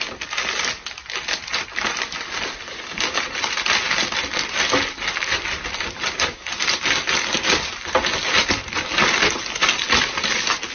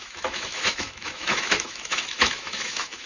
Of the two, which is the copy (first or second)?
second